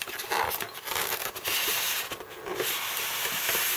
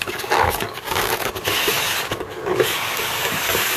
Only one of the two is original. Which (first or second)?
first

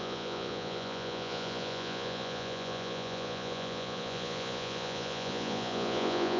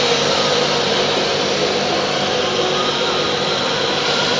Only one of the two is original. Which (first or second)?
second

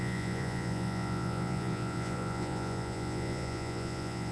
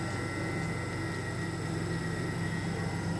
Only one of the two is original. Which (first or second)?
second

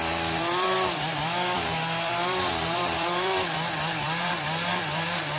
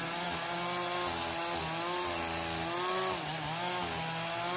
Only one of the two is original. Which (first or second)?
second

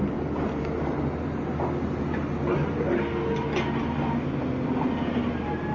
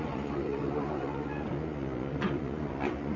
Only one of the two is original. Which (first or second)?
first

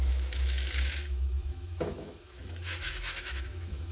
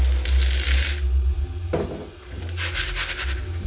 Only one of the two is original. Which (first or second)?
second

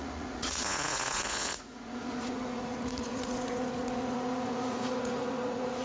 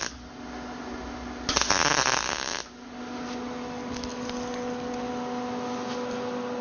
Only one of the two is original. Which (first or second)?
second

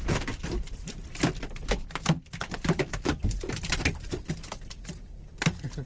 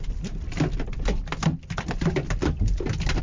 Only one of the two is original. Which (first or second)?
second